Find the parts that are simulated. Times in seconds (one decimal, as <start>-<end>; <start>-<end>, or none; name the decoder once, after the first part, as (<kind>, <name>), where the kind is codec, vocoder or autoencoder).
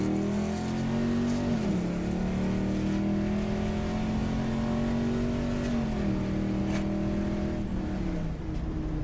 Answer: none